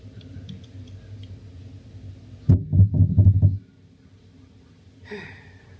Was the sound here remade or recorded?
recorded